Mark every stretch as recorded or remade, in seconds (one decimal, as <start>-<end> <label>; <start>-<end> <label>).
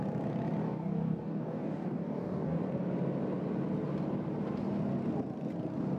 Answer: 0.0-0.6 recorded; 0.6-2.6 remade; 2.6-6.0 recorded